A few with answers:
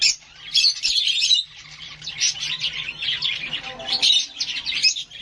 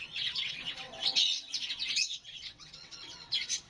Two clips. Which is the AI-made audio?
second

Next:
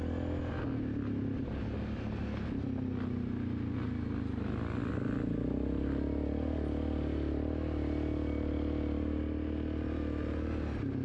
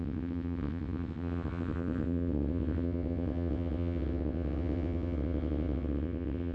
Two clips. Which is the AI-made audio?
second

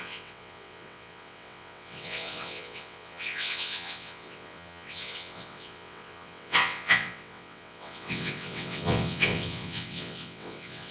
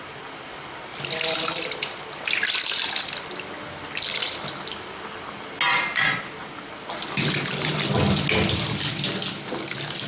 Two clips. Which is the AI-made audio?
first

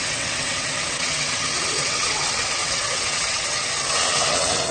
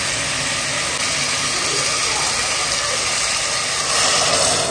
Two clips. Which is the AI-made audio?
first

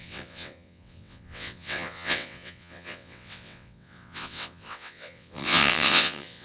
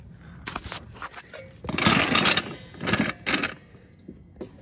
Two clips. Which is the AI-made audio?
first